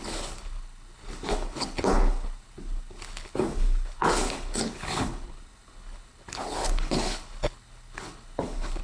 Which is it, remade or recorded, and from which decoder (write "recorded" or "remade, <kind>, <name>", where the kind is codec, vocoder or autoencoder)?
remade, codec, HILCodec